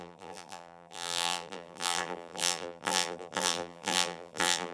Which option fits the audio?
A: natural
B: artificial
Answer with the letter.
B